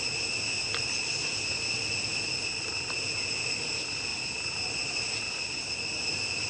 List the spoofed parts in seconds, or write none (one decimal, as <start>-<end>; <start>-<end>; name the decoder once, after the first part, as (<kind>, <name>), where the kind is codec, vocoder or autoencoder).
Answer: none